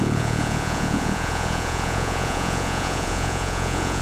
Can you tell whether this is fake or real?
fake